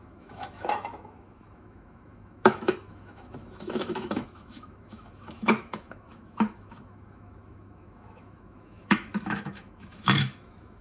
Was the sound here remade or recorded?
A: remade